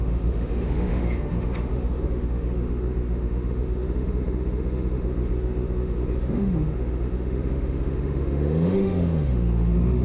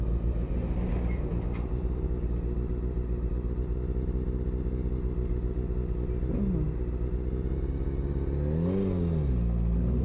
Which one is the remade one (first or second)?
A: first